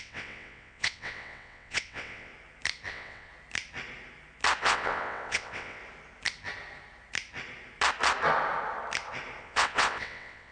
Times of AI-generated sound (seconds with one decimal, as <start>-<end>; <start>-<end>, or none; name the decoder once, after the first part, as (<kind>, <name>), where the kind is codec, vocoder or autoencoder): 0.0-2.3 (vocoder, WaveNeXt); 2.9-3.3; 4.6-5.8; 9.4-10.5